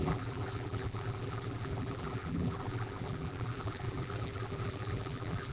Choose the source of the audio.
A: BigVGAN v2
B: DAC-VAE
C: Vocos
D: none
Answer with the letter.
A